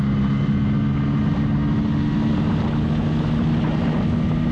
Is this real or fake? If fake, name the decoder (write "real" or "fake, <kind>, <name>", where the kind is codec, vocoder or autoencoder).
real